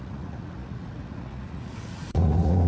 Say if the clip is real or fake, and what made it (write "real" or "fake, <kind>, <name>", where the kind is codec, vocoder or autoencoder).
fake, vocoder, Vocos